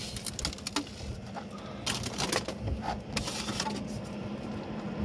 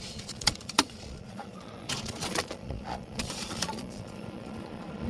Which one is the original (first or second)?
first